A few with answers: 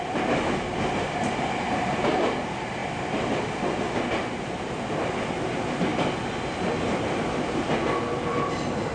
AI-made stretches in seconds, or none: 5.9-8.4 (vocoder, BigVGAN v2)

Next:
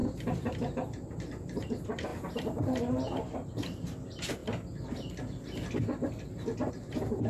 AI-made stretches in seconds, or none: 1.2-4.4 (vocoder, BigVGAN v2); 6.7-7.3

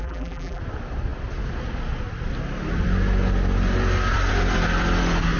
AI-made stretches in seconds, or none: 0.0-0.6 (vocoder, BigVGAN v2)

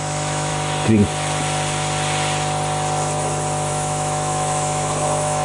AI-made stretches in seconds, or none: 0.0-0.5 (autoencoder, DAC-VAE); 3.7-5.4

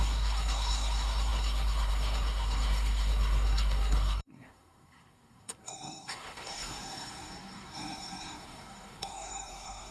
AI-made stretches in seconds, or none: 0.0-9.9 (codec, SNAC)

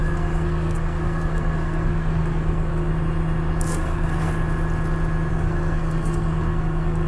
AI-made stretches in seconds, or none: 0.0-2.9 (codec, SNAC); 3.7-4.3; 5.3-7.1

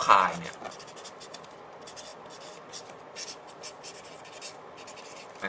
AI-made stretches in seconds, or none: none